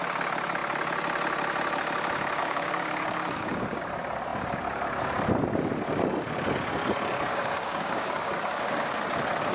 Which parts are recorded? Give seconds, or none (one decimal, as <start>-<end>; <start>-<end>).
0.0-2.4; 3.8-7.3; 9.0-9.5